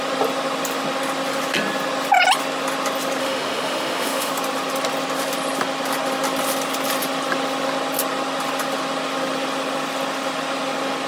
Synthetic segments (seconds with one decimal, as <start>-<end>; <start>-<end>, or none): 3.2-4.3